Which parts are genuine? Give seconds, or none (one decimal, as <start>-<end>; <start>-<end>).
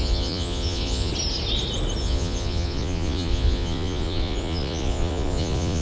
1.1-2.0